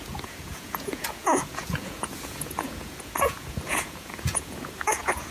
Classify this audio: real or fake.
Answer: fake